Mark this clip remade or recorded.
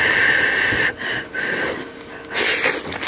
recorded